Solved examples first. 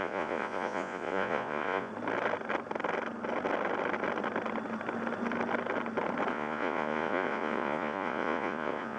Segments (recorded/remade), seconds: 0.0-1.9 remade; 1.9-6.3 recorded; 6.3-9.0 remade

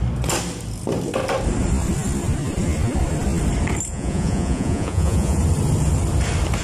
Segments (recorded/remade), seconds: 0.0-3.9 recorded; 3.9-5.4 remade; 5.4-6.6 recorded

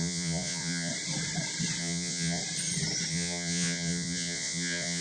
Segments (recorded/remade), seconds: 0.0-0.9 remade; 0.9-1.8 recorded; 1.8-2.4 remade; 2.4-3.1 recorded; 3.1-5.0 remade

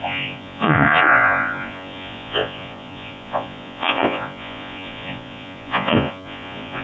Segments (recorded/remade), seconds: 0.0-6.8 remade

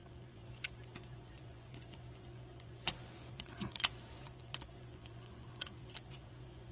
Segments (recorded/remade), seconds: 0.0-6.7 remade